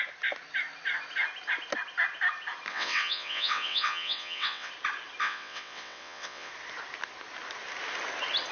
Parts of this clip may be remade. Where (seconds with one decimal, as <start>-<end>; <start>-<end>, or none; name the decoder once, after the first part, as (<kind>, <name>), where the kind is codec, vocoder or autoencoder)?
2.7-4.7 (vocoder, WaveNeXt); 5.2-6.5